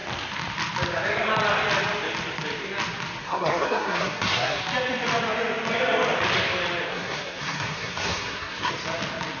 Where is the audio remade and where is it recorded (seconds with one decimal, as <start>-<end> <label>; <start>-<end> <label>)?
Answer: 0.0-3.2 recorded; 3.2-4.6 remade; 4.6-6.9 recorded; 6.9-8.7 remade; 8.7-9.4 recorded